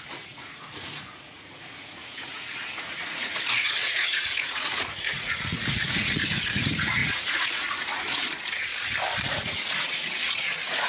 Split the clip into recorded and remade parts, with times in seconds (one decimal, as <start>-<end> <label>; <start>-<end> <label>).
0.0-8.7 remade; 8.7-9.3 recorded; 9.3-10.9 remade